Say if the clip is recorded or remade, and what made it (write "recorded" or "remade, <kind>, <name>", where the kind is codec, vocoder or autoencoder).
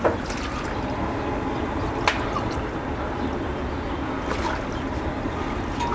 recorded